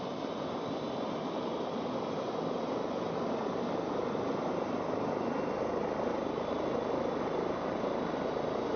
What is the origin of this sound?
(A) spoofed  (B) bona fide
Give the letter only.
B